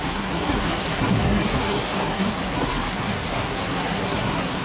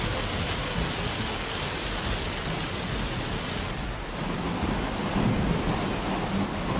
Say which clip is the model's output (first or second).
first